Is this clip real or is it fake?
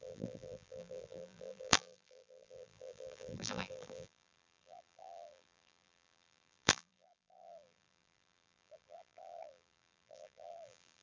fake